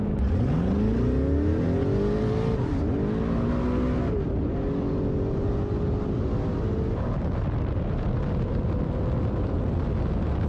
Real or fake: real